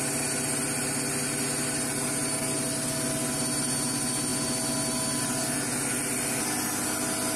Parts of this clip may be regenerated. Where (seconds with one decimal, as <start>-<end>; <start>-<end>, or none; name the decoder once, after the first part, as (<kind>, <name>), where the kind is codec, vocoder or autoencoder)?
none